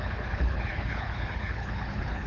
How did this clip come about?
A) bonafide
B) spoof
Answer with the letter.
B